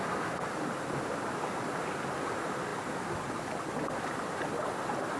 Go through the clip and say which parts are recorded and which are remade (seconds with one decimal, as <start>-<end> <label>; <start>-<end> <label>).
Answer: 0.0-5.2 recorded